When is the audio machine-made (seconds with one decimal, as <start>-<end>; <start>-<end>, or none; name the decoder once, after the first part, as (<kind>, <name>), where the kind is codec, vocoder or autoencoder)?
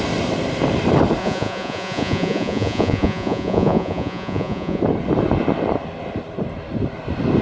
1.2-4.8 (vocoder, Vocos)